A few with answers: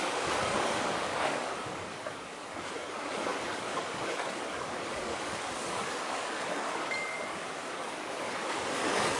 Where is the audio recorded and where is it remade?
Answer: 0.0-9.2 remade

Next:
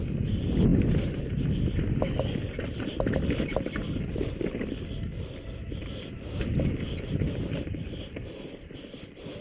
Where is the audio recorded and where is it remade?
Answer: 0.0-9.4 recorded

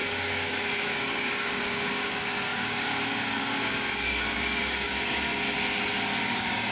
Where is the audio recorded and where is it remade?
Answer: 0.0-5.3 remade; 5.3-6.3 recorded; 6.3-6.7 remade

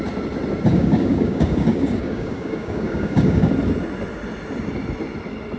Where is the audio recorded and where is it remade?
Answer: 0.0-0.7 recorded; 0.7-3.5 remade; 3.5-5.6 recorded

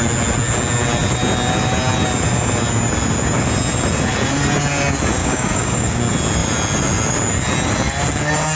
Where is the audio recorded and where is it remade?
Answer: 0.0-5.2 recorded; 5.2-6.0 remade; 6.0-8.6 recorded

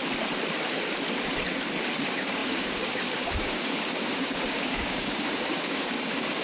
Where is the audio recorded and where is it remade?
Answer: 0.0-2.0 recorded; 2.0-6.4 remade